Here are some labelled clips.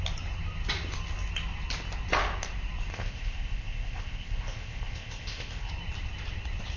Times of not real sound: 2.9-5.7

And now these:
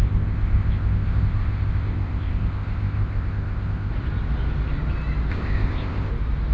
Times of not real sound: 0.0-3.9; 5.3-6.1